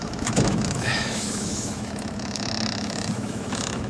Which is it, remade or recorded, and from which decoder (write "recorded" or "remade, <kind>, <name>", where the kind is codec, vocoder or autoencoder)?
remade, autoencoder, DAC-VAE